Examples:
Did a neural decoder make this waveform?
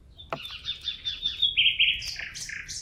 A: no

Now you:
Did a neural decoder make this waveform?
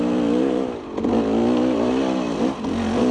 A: no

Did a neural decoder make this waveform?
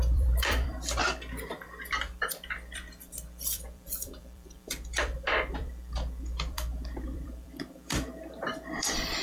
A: yes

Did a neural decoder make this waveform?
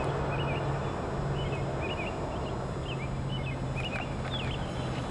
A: no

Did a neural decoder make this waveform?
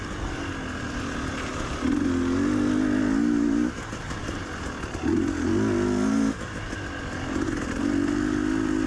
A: no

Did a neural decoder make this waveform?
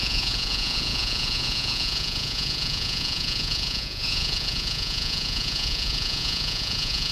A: yes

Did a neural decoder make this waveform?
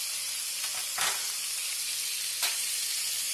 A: no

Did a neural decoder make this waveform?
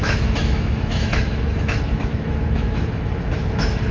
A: yes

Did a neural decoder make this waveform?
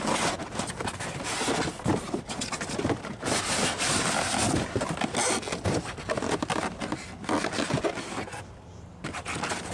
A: no